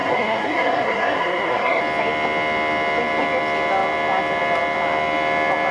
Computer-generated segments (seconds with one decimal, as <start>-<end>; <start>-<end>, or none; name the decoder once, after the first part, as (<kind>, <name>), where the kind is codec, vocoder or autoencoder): 0.0-1.8 (codec, SNAC)